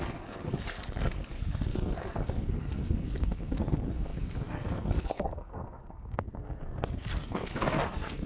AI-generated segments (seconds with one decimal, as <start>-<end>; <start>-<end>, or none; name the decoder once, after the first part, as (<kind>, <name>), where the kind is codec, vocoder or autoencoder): 0.0-8.3 (codec, SNAC)

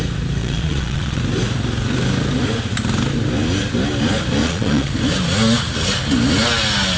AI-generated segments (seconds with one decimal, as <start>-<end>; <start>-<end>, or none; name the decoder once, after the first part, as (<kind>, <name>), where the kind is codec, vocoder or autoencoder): 0.4-1.2 (vocoder, Vocos); 4.4-4.9

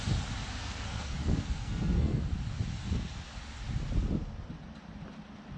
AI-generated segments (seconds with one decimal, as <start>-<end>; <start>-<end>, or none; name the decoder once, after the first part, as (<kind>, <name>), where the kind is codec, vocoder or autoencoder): 0.6-2.2 (codec, SNAC)

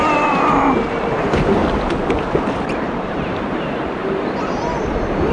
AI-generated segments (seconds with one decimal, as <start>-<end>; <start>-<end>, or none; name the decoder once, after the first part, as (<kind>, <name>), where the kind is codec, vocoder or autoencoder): 0.0-1.6 (vocoder, BigVGAN v2); 2.5-5.3

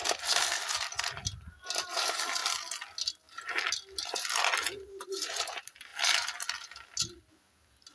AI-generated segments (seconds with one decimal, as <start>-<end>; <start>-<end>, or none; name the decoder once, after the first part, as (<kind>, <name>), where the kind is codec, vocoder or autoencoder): none

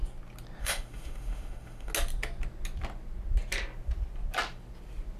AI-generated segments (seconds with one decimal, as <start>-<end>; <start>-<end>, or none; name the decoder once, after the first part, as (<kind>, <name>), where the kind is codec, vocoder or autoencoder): 0.6-1.9 (autoencoder, DAC-VAE)